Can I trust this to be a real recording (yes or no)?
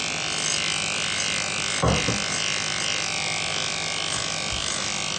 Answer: yes